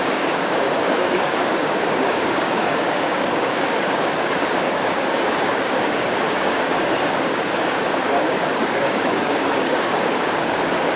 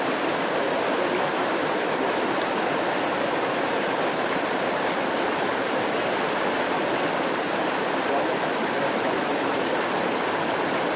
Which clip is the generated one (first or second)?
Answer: first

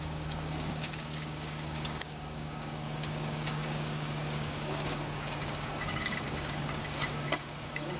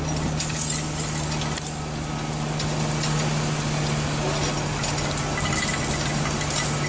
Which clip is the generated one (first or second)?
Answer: first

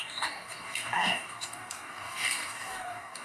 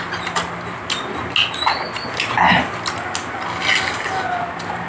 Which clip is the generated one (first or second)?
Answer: first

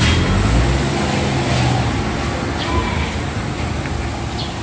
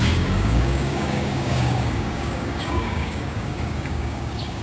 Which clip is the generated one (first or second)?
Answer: second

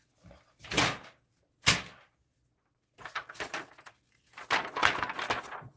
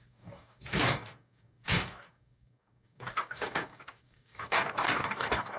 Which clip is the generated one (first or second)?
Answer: second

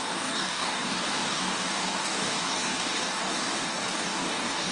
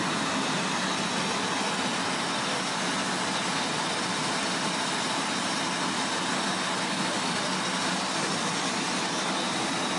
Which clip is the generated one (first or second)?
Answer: first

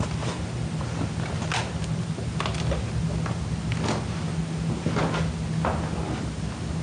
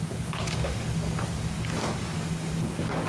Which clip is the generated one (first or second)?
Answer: second